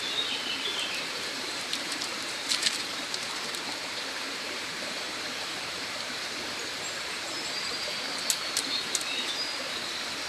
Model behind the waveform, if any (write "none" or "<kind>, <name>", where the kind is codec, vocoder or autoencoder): vocoder, BigVGAN v2